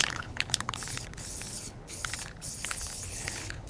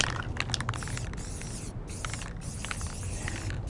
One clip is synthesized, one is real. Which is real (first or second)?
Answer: second